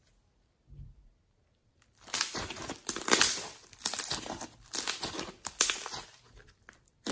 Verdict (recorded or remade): recorded